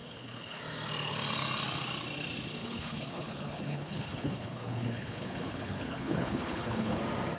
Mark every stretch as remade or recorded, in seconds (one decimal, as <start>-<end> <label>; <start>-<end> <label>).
0.0-0.6 remade; 0.6-2.6 recorded; 2.6-7.0 remade; 7.0-7.4 recorded